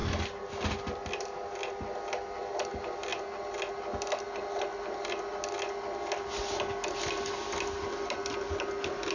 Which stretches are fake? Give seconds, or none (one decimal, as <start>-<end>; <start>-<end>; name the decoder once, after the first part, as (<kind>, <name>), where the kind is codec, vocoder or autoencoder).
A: none